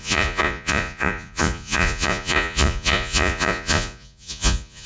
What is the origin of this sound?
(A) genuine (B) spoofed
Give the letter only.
B